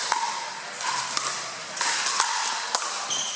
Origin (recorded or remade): recorded